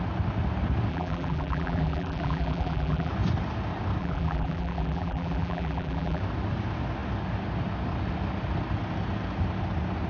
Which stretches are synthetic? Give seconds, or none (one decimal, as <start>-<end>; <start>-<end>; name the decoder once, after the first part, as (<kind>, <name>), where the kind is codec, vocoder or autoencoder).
0.9-3.1 (vocoder, BigVGAN v2); 4.0-6.2